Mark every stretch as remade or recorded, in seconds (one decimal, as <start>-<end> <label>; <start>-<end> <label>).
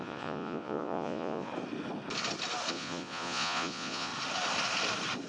0.0-1.5 remade; 1.5-2.7 recorded; 2.7-4.1 remade; 4.1-5.3 recorded